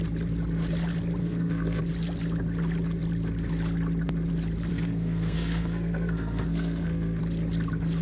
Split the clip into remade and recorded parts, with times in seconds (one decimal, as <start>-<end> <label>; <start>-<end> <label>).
0.0-1.2 recorded; 1.2-1.8 remade; 1.8-4.7 recorded; 4.7-7.2 remade; 7.2-8.0 recorded